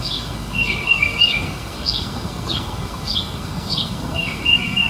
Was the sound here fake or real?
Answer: fake